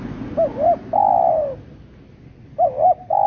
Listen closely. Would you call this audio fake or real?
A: real